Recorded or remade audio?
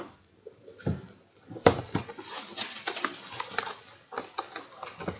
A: remade